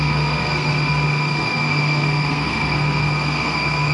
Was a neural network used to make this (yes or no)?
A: yes